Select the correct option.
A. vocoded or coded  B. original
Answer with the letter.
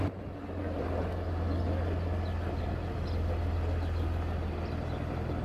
B